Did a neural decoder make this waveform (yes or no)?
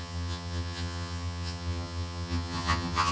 yes